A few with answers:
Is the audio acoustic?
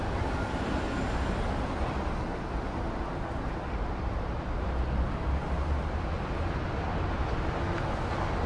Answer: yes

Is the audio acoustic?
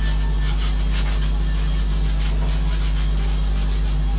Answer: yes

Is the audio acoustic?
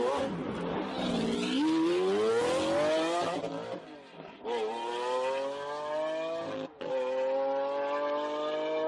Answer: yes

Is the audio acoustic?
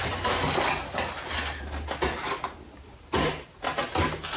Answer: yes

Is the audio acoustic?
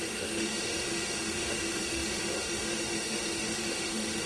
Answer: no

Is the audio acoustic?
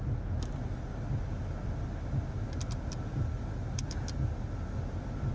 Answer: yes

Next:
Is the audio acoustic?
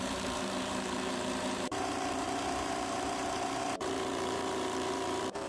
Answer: no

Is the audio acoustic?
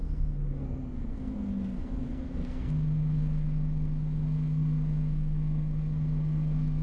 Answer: no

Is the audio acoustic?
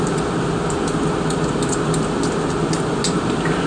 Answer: yes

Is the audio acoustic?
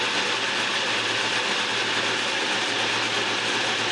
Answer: yes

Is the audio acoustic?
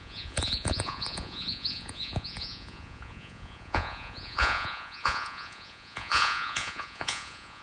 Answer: no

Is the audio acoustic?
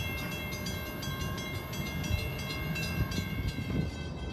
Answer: yes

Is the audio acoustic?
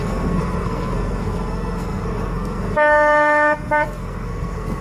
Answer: no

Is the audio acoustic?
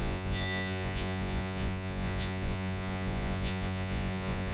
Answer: no